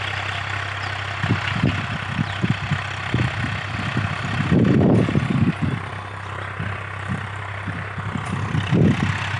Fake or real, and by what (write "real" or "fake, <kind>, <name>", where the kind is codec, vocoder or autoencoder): real